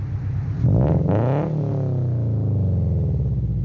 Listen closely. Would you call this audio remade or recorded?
recorded